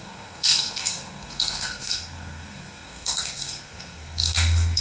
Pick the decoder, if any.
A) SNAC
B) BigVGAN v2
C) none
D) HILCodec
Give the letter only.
A